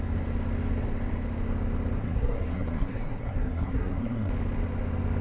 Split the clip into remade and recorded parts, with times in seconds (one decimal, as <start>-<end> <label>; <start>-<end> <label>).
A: 0.0-2.0 recorded; 2.0-4.3 remade; 4.3-5.2 recorded